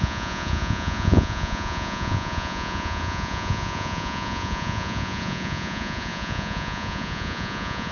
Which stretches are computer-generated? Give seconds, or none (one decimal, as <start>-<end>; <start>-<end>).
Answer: 0.0-7.9